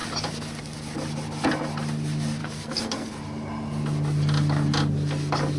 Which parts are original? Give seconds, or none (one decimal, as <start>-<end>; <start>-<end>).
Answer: 0.0-2.4; 3.1-5.6